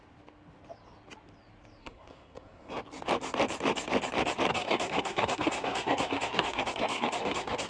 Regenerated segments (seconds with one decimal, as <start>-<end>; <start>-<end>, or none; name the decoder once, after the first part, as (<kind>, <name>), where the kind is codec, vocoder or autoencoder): 1.8-2.8 (codec, SNAC); 4.5-7.7